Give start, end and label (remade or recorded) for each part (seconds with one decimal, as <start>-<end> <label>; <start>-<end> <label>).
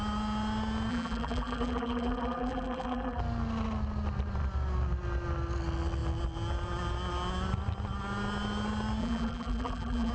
0.0-0.9 recorded; 0.9-3.2 remade; 3.2-9.0 recorded; 9.0-10.1 remade